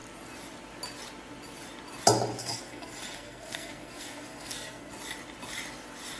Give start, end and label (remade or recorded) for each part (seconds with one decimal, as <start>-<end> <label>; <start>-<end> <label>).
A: 0.0-2.4 recorded; 2.4-4.9 remade; 4.9-6.2 recorded